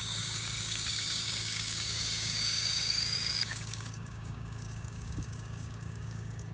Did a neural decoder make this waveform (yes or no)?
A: yes